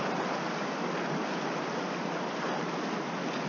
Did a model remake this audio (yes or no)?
no